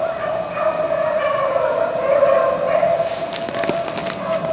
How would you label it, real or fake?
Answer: real